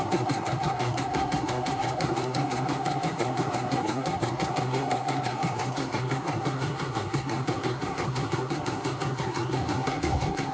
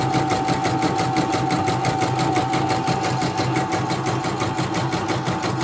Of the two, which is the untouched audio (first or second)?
second